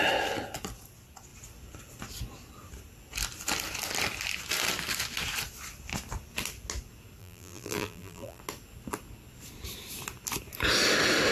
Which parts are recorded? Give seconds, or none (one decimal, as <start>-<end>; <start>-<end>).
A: 0.0-7.2; 8.4-11.3